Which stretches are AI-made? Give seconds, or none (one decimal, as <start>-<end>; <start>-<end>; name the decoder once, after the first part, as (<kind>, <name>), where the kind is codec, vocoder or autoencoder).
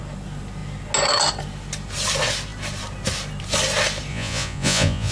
4.1-5.1 (vocoder, Vocos)